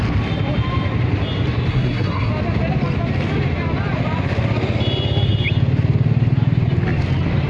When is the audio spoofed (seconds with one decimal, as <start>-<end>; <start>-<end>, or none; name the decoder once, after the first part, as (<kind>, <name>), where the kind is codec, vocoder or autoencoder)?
1.7-2.3 (codec, SNAC)